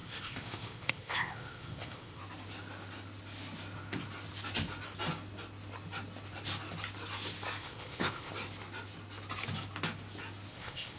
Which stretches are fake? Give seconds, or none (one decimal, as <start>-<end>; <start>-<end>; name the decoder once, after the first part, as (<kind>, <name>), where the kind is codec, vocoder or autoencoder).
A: 0.0-2.2 (codec, ZipCodec); 7.6-8.3; 10.5-11.0